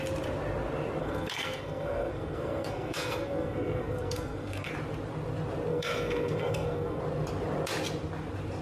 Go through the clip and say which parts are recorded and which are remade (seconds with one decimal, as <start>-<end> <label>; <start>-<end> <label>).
0.0-1.0 recorded; 1.0-4.7 remade; 4.7-5.7 recorded; 5.7-7.0 remade; 7.0-8.6 recorded